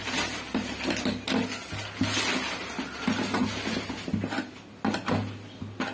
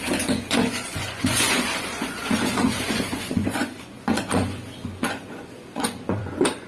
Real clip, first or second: first